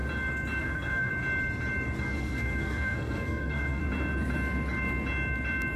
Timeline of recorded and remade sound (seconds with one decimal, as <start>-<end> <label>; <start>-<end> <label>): 0.0-0.6 recorded; 0.6-1.1 remade; 1.1-2.0 recorded; 2.0-3.8 remade; 3.8-5.8 recorded